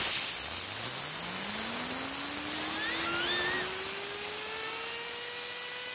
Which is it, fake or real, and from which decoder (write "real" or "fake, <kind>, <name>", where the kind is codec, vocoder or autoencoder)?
real